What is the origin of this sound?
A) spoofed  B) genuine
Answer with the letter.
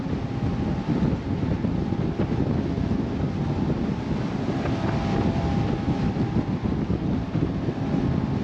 B